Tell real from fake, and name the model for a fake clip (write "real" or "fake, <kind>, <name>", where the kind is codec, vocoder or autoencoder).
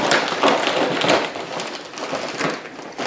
real